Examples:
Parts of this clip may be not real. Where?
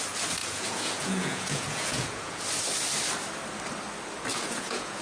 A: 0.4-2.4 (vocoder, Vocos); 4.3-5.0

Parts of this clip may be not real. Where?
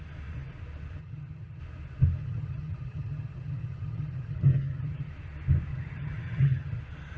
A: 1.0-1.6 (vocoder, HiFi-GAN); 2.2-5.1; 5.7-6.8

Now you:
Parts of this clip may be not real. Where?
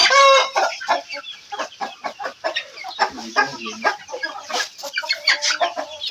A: 0.0-3.3 (vocoder, BigVGAN v2); 4.8-5.5